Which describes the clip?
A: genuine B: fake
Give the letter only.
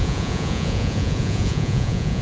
B